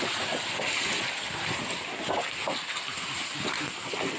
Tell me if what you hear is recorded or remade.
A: recorded